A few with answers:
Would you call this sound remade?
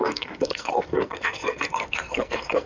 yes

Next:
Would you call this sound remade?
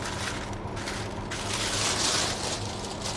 no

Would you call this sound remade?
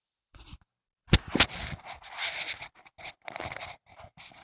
no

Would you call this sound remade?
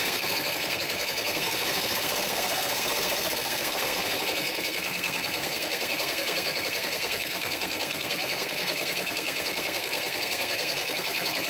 yes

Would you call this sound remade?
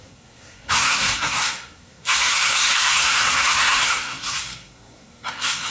yes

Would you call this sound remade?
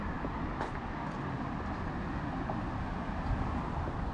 no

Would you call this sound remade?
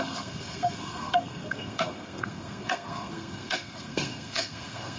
yes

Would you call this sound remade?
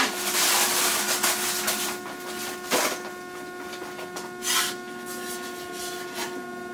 no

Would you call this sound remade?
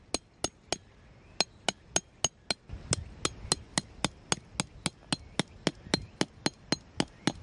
no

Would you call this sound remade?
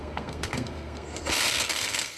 yes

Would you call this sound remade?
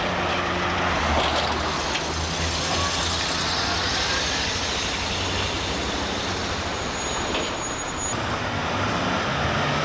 no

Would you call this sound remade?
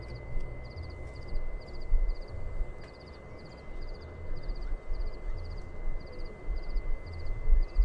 no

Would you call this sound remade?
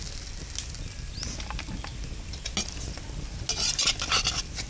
no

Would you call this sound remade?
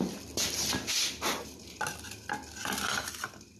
no